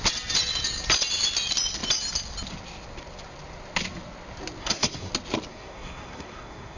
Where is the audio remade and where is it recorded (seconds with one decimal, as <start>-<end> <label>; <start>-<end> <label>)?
0.0-4.6 recorded; 4.6-5.1 remade; 5.1-5.5 recorded; 5.5-6.8 remade